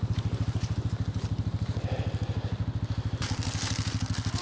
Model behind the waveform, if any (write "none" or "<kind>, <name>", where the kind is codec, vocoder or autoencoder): none